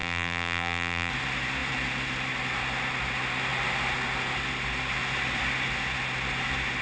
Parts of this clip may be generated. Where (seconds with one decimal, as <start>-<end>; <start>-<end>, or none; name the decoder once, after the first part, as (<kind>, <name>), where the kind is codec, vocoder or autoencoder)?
0.0-1.1 (vocoder, BigVGAN v2)